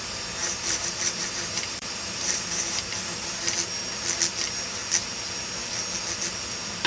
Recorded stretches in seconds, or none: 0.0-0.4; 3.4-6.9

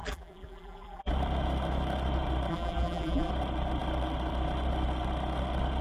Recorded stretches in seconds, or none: 1.1-2.5; 3.3-5.8

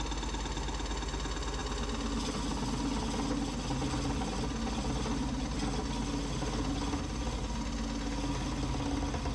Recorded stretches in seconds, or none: 0.0-9.3

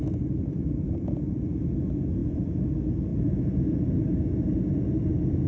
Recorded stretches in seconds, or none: 0.0-2.2; 2.7-5.5

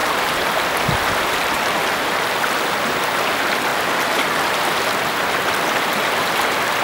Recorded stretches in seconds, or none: 0.6-6.8

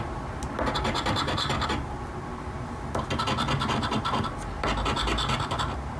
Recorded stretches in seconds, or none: 0.0-2.3; 3.0-6.0